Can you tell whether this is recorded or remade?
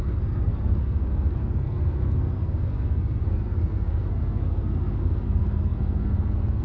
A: remade